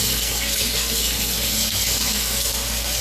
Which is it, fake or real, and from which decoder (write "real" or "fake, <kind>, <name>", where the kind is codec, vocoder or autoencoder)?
fake, codec, SNAC